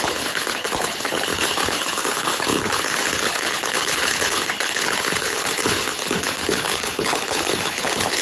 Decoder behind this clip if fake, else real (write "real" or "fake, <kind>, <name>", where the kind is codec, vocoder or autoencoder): fake, codec, HILCodec